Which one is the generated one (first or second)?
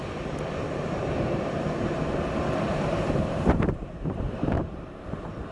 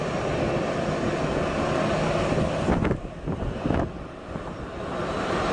first